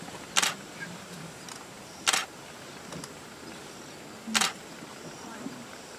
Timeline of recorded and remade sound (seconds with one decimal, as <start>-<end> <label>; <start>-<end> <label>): 0.0-2.2 remade; 2.2-4.9 recorded; 4.9-6.0 remade

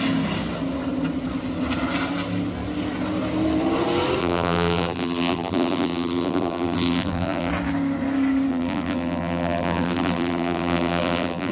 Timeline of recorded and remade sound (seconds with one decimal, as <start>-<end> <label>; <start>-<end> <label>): 0.0-4.2 recorded; 4.2-7.5 remade; 7.5-8.5 recorded; 8.5-11.5 remade

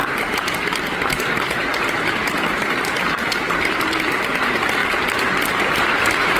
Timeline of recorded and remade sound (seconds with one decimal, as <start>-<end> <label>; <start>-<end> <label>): 0.0-3.4 remade; 3.4-6.4 recorded

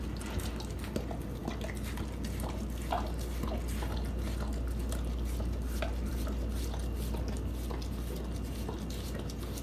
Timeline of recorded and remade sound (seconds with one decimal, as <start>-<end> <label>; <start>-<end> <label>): 0.0-9.6 recorded

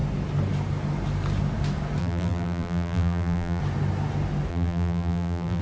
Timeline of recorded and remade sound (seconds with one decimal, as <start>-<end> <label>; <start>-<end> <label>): 0.0-2.0 recorded; 2.0-3.6 remade; 3.6-4.5 recorded; 4.5-5.6 remade

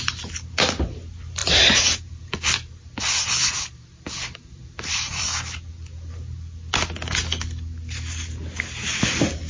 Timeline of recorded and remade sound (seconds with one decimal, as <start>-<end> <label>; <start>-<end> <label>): 0.0-1.4 recorded; 1.4-2.5 remade; 2.5-3.4 recorded; 3.4-5.2 remade; 5.2-9.5 recorded

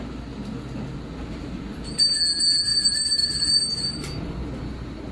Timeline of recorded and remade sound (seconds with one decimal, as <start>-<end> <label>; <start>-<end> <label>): 0.0-2.7 recorded; 2.7-5.1 remade

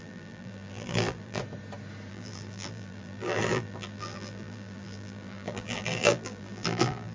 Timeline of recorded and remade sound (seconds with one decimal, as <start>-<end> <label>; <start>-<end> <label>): 0.0-1.4 remade; 1.4-2.1 recorded; 2.1-7.1 remade